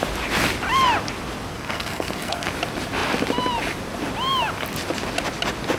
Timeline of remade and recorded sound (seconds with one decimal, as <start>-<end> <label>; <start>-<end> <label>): 0.0-1.5 recorded; 1.5-2.5 remade; 2.5-5.8 recorded